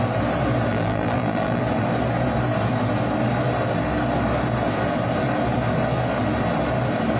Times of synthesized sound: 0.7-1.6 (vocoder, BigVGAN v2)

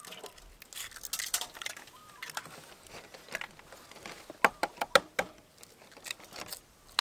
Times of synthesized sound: none

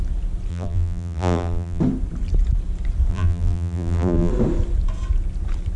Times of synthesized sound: 0.5-1.8 (vocoder, BigVGAN v2); 3.1-4.3

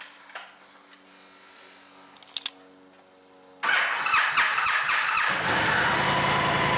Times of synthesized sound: 4.5-5.3 (vocoder, BigVGAN v2)